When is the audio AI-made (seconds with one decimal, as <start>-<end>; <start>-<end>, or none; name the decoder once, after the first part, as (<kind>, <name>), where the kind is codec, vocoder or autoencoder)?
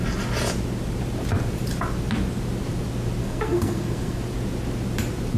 3.2-4.2 (codec, SNAC)